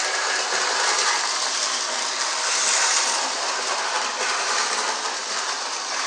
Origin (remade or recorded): recorded